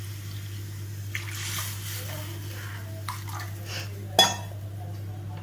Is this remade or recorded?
recorded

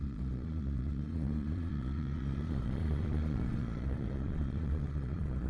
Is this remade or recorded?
remade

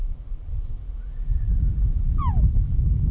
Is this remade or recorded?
remade